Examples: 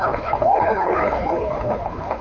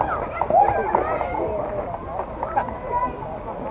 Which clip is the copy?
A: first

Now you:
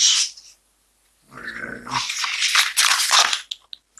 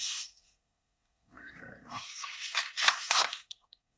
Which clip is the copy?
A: second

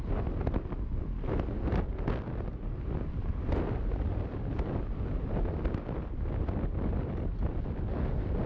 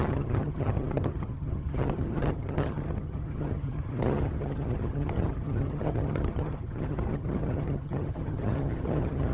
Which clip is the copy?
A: second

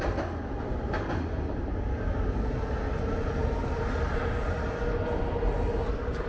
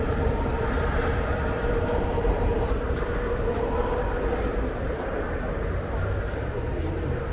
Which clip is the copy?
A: second